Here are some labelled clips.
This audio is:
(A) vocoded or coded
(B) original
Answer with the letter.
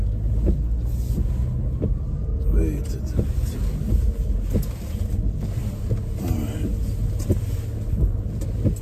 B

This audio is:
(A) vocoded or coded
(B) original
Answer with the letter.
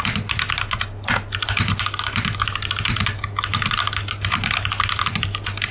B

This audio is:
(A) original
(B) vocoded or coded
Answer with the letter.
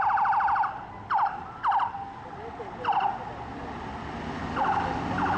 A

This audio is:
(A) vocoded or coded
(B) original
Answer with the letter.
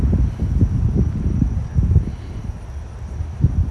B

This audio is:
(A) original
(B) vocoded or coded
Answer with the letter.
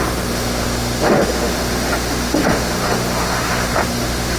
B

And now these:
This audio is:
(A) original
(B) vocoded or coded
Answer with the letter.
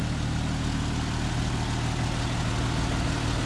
A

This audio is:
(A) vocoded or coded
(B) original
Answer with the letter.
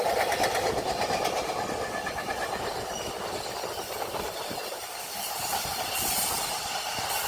B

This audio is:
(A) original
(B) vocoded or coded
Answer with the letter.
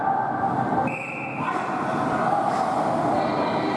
A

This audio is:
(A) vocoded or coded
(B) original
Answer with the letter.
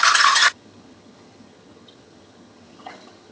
A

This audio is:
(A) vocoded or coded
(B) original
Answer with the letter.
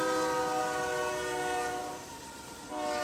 B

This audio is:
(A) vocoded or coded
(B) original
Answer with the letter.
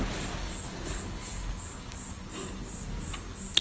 B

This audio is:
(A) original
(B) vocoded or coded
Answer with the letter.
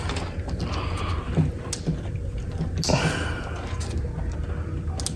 A